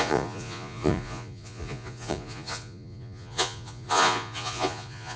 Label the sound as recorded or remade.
remade